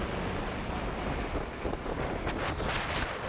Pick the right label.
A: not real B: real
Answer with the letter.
B